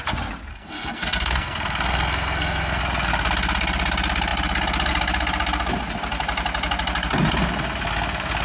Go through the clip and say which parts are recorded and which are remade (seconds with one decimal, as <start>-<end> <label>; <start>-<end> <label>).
0.0-0.5 recorded; 0.5-2.8 remade; 2.8-8.4 recorded